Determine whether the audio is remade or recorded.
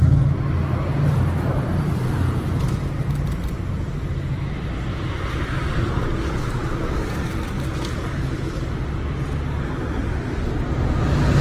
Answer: recorded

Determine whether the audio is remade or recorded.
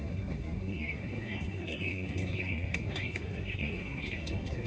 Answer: remade